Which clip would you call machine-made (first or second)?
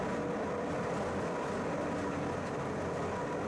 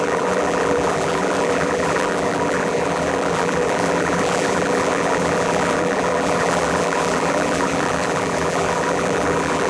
second